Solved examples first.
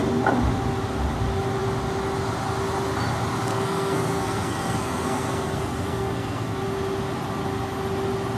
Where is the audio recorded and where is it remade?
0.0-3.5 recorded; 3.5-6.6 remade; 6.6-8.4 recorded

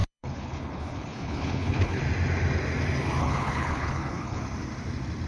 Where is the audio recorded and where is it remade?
0.0-2.0 remade; 2.0-3.2 recorded; 3.2-4.4 remade; 4.4-5.3 recorded